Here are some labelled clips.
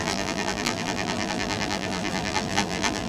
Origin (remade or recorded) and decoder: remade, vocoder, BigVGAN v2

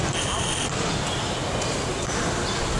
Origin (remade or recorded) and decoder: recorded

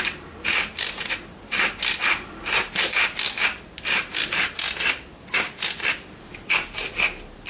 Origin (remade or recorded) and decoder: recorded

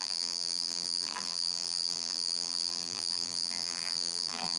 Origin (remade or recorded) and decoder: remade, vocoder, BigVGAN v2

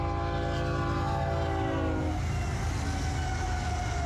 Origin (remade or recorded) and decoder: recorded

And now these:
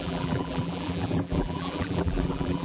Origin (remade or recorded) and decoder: remade, vocoder, BigVGAN v2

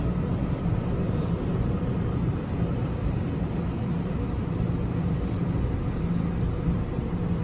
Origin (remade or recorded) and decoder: remade, vocoder, BigVGAN v2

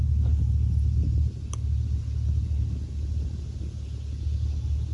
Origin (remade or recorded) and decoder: recorded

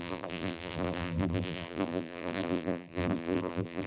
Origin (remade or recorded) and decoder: remade, vocoder, BigVGAN v2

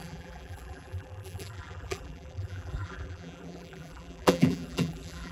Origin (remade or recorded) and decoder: remade, vocoder, BigVGAN v2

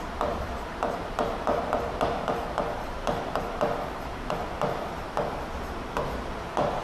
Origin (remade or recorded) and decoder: remade, vocoder, BigVGAN v2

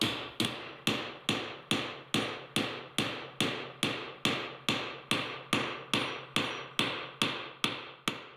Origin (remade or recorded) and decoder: recorded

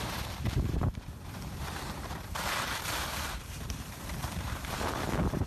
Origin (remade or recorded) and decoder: remade, vocoder, BigVGAN v2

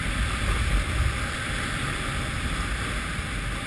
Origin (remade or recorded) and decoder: recorded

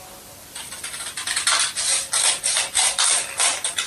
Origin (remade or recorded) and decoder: recorded